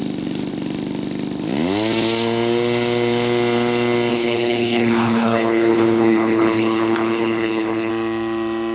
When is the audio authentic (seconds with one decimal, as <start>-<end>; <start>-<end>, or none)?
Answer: 0.0-4.1; 7.9-8.7